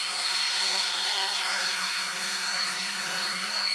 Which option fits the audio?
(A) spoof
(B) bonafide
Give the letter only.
A